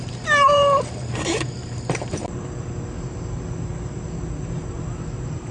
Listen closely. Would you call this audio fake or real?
fake